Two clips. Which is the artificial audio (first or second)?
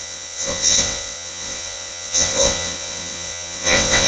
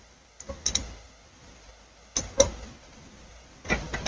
first